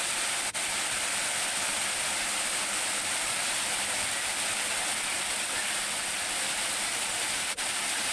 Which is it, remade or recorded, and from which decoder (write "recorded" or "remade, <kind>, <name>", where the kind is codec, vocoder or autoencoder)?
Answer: recorded